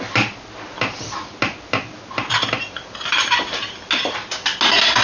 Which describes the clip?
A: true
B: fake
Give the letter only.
A